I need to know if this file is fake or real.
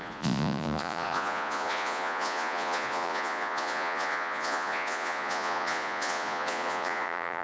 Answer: fake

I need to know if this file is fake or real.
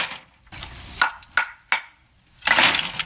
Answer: real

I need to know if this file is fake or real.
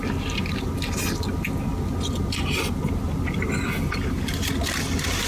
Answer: real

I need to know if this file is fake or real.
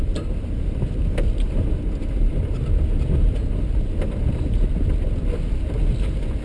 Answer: real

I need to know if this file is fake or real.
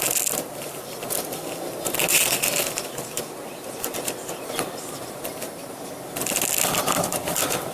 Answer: real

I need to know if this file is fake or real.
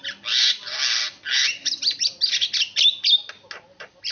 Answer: real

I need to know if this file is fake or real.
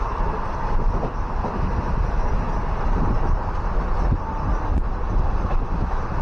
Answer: real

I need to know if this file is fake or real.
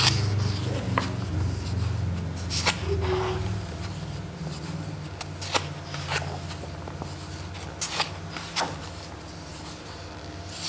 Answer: real